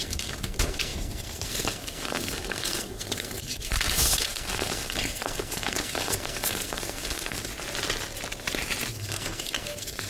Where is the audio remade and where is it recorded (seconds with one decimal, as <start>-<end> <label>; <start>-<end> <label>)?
0.0-7.5 remade; 7.5-8.9 recorded; 8.9-10.1 remade